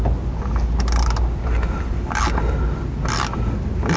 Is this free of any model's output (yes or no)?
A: yes